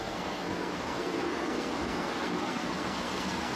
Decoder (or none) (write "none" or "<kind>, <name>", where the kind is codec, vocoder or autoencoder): codec, SNAC